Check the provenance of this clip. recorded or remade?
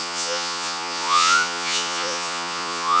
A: remade